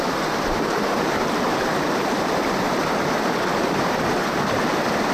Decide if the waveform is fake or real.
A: fake